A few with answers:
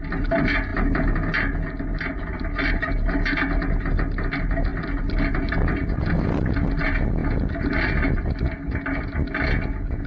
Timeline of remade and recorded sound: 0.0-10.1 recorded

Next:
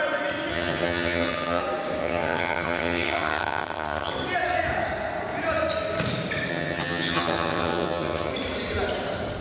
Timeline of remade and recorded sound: 0.0-0.5 recorded; 0.5-1.6 remade; 1.6-2.0 recorded; 2.0-4.1 remade; 4.1-6.5 recorded; 6.5-8.3 remade; 8.3-9.4 recorded

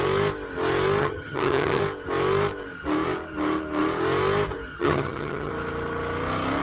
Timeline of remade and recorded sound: 0.0-1.0 recorded; 1.0-1.8 remade; 1.8-4.7 recorded; 4.7-5.5 remade; 5.5-6.6 recorded

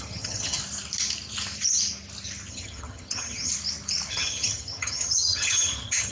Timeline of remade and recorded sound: 0.0-0.6 remade; 0.6-2.5 recorded; 2.5-3.5 remade; 3.5-4.1 recorded; 4.1-6.1 remade

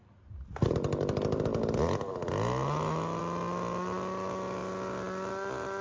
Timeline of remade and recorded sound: 0.0-5.8 recorded